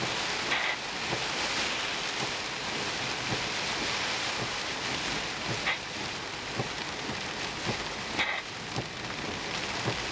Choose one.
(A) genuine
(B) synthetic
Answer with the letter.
A